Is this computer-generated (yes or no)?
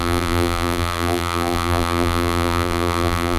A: yes